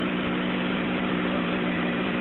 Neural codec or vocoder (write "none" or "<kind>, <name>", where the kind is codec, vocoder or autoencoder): vocoder, BigVGAN v2